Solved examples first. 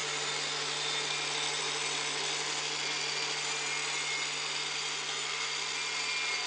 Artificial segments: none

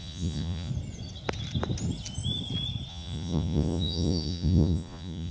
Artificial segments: 0.0-0.7; 2.9-5.3